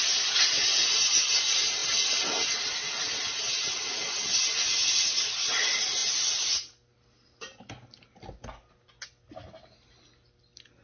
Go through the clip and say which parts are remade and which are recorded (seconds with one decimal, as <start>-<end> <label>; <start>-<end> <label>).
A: 0.0-10.8 recorded